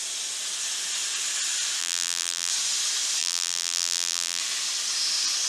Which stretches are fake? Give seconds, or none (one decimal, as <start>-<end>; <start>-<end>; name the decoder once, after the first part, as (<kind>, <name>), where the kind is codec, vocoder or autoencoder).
1.8-2.5 (vocoder, BigVGAN v2); 3.2-4.4